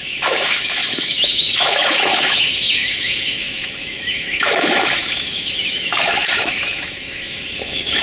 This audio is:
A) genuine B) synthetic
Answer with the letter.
B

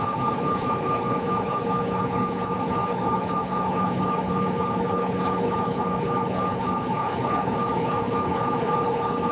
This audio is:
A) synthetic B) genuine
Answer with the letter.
A